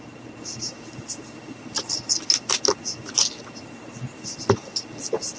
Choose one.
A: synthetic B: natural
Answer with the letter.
B